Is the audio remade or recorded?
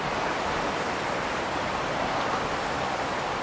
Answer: remade